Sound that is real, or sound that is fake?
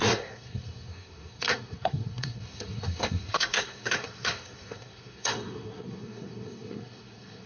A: fake